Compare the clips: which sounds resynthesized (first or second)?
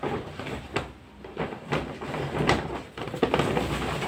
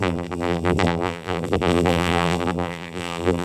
second